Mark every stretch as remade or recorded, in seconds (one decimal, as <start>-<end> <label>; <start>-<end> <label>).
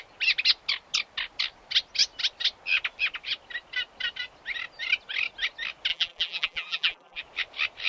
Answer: 0.0-5.9 recorded; 5.9-7.2 remade; 7.2-7.9 recorded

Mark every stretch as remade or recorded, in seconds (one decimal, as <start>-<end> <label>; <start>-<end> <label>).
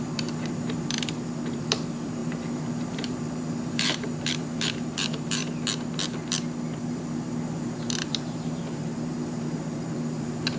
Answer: 0.0-5.4 remade; 5.4-6.8 recorded; 6.8-10.6 remade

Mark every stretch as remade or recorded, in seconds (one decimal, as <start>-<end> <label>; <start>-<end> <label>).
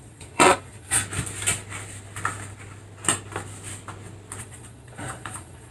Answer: 0.0-1.0 remade; 1.0-4.4 recorded; 4.4-5.7 remade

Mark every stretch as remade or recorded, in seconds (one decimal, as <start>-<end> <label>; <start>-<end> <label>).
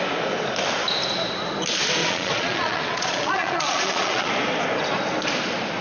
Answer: 0.0-2.0 recorded; 2.0-4.3 remade; 4.3-5.8 recorded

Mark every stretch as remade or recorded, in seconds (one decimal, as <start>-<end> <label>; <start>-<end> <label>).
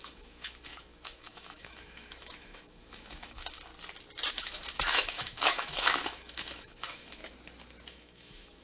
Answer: 0.0-3.7 remade; 3.7-4.3 recorded; 4.3-7.2 remade; 7.2-7.9 recorded; 7.9-8.6 remade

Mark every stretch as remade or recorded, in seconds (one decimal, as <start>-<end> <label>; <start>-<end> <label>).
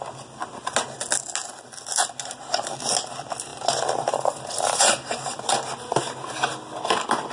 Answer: 0.0-3.5 recorded; 3.5-5.4 remade; 5.4-7.3 recorded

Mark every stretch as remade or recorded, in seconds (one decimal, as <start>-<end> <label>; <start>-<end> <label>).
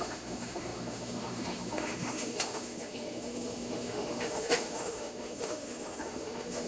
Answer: 0.0-6.7 remade